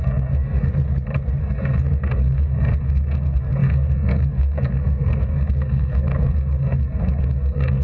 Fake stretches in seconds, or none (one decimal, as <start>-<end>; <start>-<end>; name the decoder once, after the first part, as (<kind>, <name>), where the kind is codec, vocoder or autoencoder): 0.0-0.7 (codec, SNAC); 1.4-7.8